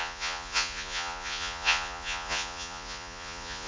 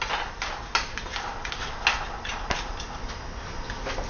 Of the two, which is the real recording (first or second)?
second